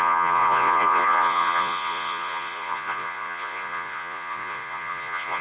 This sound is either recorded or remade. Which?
remade